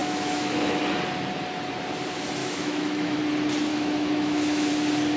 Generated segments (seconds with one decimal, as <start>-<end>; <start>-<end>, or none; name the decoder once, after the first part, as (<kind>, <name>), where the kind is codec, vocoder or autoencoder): 0.0-0.8 (autoencoder, DAC-VAE); 2.4-3.2; 3.7-4.7